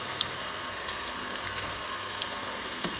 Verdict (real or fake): fake